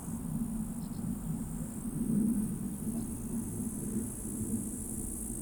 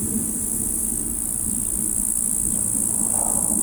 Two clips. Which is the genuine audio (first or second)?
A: first